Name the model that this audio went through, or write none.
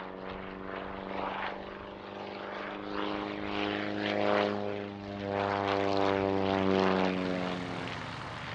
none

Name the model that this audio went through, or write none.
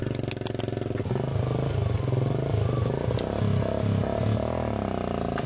none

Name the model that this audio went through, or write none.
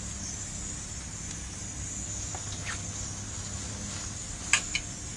none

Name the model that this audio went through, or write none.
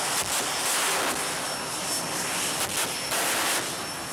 none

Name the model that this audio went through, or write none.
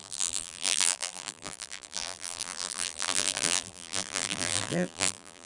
vocoder, BigVGAN v2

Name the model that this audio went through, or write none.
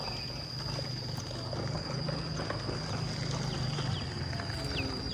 none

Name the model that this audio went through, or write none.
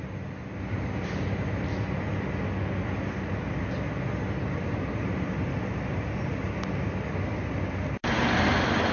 none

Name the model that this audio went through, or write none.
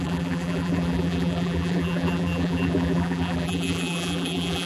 vocoder, BigVGAN v2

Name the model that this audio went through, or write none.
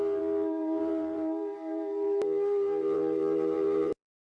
vocoder, BigVGAN v2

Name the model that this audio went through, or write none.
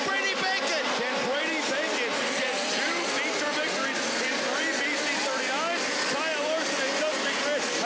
none